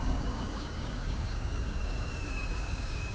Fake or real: fake